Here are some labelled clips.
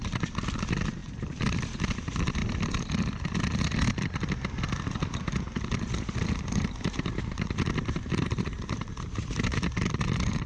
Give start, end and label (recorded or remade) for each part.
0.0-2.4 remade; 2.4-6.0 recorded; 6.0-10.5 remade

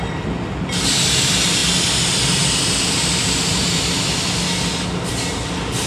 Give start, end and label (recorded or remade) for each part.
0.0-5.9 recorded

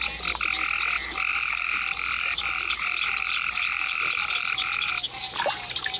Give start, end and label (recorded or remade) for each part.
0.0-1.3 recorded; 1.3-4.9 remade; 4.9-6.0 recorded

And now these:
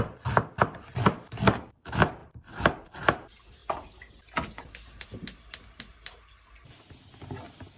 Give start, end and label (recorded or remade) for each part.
0.0-2.2 recorded; 2.2-2.9 remade; 2.9-3.6 recorded; 3.6-4.2 remade; 4.2-7.8 recorded